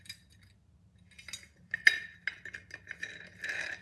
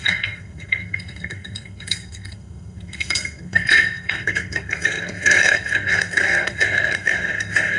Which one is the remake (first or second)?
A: second